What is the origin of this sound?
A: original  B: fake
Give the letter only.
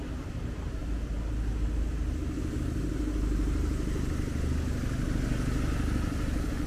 A